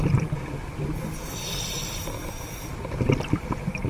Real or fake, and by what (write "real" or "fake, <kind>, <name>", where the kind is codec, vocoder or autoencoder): real